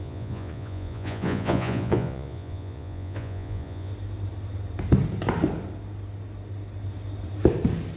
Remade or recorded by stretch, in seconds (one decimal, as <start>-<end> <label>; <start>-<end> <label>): 0.0-3.9 remade; 3.9-8.0 recorded